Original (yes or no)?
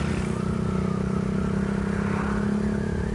yes